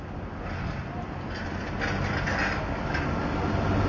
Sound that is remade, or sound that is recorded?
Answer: recorded